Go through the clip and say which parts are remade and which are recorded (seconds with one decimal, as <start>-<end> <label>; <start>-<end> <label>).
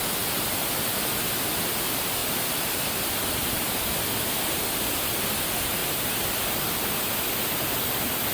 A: 0.0-2.2 recorded; 2.2-2.9 remade; 2.9-3.4 recorded; 3.4-4.0 remade; 4.0-8.3 recorded